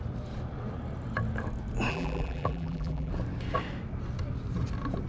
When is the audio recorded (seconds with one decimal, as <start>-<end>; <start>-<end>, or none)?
0.0-1.9; 3.1-5.1